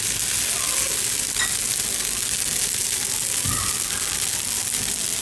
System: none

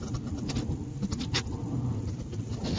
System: none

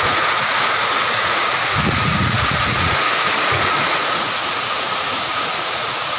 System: vocoder, Vocos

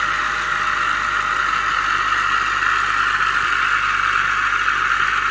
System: none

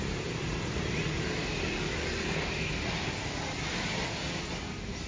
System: none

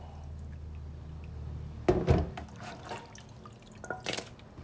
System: none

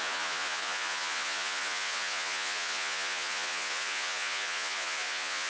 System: vocoder, Vocos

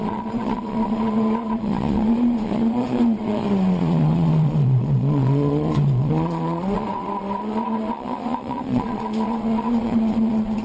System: vocoder, Vocos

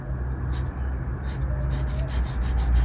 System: none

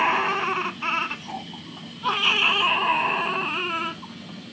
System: none